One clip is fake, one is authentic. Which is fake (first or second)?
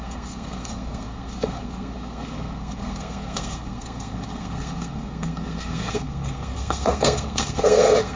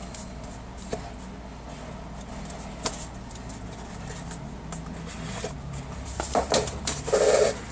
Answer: first